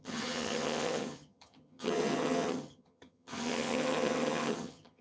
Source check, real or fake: fake